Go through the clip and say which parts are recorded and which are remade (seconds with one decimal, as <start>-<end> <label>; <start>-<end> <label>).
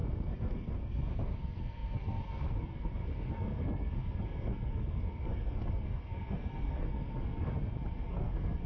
0.0-8.7 remade